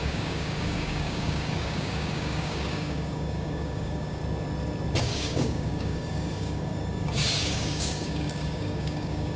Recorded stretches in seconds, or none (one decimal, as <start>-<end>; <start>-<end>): 4.2-5.0